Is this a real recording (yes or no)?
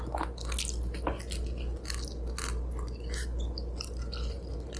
yes